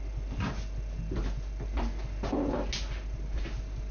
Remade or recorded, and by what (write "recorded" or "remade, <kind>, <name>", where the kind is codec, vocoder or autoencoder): recorded